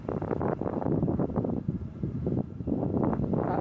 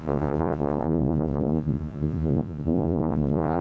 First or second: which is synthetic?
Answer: second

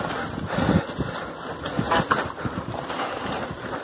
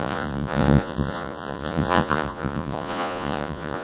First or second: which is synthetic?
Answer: second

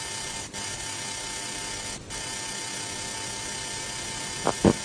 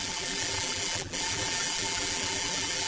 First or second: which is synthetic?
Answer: second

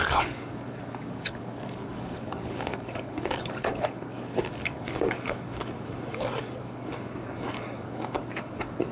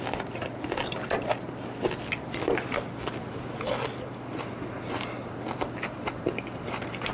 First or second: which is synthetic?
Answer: first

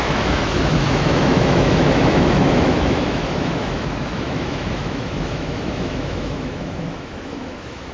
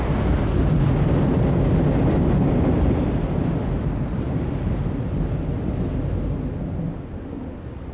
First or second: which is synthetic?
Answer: first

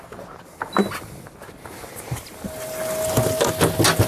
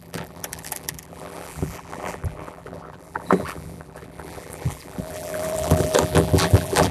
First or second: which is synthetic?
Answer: second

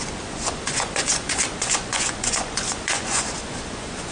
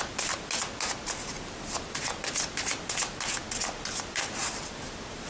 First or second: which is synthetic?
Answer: first